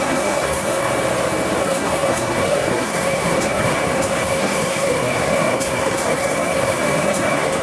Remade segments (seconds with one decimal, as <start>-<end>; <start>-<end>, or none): 0.0-0.9; 1.6-7.6